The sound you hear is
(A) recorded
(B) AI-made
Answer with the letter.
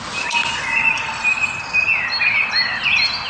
A